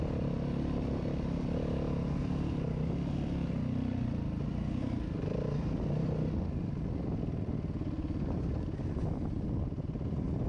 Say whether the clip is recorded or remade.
recorded